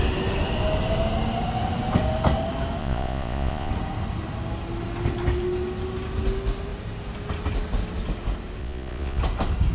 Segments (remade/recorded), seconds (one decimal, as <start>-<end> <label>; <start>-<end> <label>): 0.0-2.8 recorded; 2.8-3.7 remade; 3.7-8.6 recorded; 8.6-9.2 remade; 9.2-9.7 recorded